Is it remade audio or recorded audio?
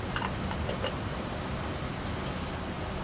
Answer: recorded